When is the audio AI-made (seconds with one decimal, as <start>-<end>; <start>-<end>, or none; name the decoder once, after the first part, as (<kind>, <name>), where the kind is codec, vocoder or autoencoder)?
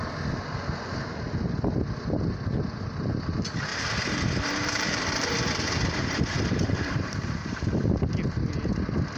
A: 3.7-8.0 (vocoder, BigVGAN v2)